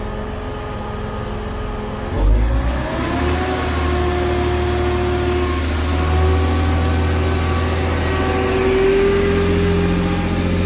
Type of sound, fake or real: real